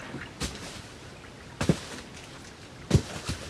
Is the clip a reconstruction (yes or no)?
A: no